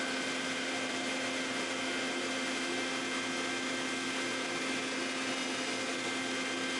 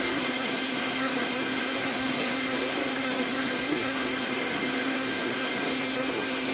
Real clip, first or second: first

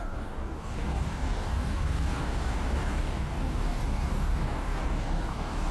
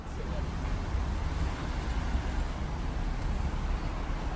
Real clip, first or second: second